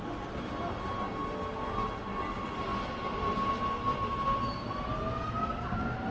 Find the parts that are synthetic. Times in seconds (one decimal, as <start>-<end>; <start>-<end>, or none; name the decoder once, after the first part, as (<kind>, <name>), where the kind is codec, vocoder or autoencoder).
none